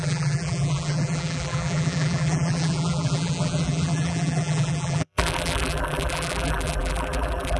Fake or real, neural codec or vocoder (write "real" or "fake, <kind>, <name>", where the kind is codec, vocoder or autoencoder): fake, vocoder, BigVGAN v2